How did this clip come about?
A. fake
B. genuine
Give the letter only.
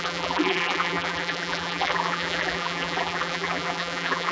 A